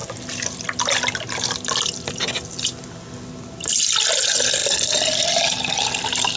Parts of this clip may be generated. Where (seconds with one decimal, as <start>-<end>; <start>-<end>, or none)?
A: none